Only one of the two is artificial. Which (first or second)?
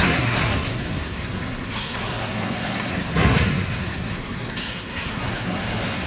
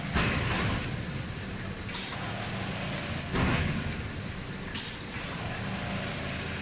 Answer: first